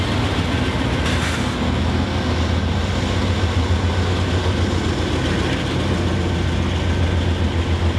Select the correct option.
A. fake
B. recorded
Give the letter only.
B